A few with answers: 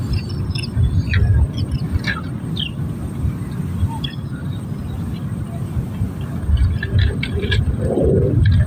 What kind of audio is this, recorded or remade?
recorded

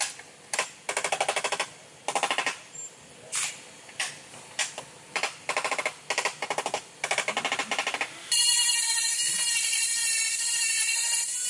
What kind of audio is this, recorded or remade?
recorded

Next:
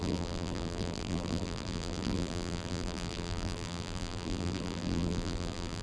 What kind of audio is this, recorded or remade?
remade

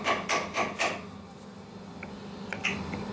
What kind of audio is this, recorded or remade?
recorded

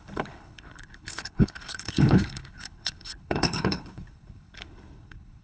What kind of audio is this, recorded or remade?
remade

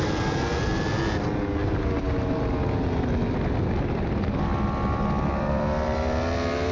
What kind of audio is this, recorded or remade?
recorded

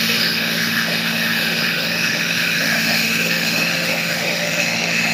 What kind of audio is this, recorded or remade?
remade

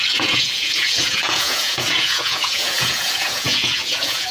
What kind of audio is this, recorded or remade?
remade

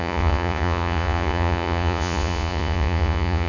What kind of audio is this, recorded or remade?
remade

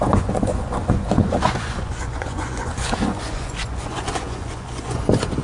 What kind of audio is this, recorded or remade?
remade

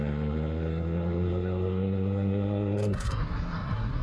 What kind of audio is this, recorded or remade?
remade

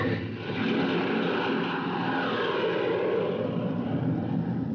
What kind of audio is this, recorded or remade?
recorded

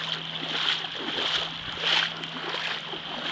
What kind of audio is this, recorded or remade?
recorded